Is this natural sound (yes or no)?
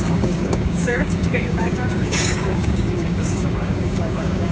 no